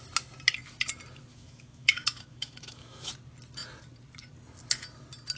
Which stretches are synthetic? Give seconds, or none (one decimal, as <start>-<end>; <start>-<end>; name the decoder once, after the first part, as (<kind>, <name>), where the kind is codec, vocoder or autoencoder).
1.3-3.1 (autoencoder, DAC-VAE)